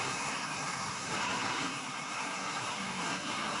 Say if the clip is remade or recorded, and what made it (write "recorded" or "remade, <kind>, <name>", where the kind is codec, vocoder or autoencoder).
remade, codec, SNAC